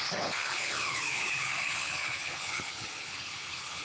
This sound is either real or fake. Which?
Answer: fake